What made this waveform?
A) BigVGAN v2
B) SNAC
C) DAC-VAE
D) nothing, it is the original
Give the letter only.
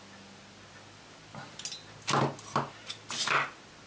D